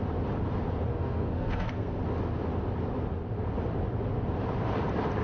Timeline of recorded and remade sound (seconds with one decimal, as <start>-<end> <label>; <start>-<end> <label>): 0.0-0.9 recorded; 0.9-2.0 remade; 2.0-5.2 recorded